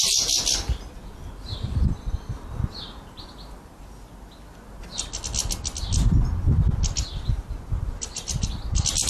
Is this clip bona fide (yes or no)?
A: yes